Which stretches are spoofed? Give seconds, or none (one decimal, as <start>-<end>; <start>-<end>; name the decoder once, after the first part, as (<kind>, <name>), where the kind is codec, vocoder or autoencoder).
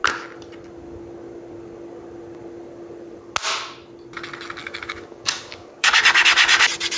4.6-6.0 (codec, DAC)